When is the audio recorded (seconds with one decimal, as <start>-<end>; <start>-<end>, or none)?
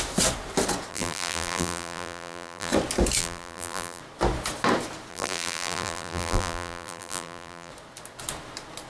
0.0-0.9; 2.7-3.2; 4.0-5.1; 7.7-8.9